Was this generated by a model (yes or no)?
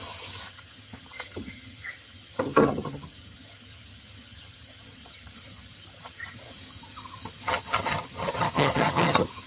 yes